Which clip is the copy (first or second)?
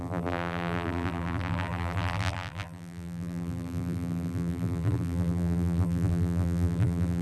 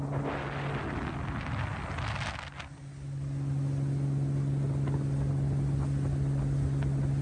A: first